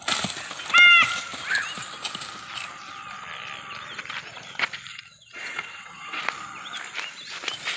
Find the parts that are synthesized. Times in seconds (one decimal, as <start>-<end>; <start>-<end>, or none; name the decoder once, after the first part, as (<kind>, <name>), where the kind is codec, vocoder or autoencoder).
4.9-6.2 (vocoder, WaveNeXt)